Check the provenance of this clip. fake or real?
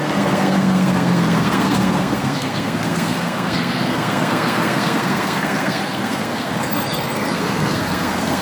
fake